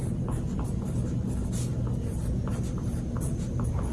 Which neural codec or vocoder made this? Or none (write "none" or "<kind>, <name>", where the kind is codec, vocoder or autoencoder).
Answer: none